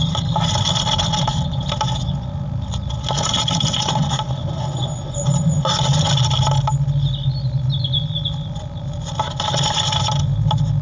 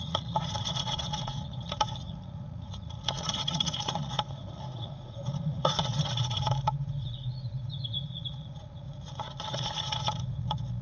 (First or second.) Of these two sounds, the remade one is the second